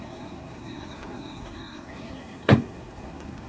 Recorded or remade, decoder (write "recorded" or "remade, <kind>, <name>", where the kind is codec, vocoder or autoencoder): remade, codec, SNAC